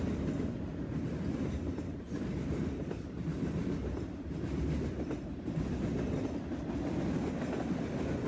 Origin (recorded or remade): recorded